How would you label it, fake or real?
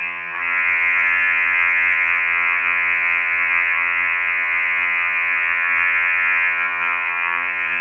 fake